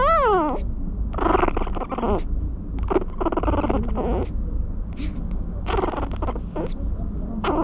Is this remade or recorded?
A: recorded